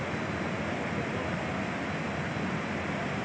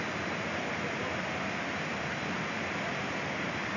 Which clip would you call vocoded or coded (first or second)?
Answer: second